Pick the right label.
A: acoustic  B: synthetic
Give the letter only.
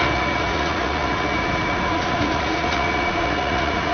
B